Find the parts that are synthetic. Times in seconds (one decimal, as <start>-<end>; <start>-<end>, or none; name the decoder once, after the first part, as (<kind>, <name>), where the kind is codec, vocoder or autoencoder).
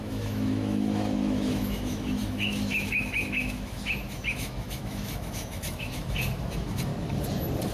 0.0-6.9 (autoencoder, DAC-VAE)